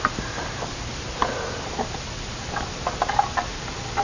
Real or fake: real